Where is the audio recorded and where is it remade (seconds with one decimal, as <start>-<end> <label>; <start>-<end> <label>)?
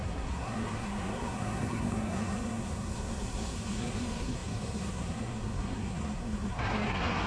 0.0-7.3 remade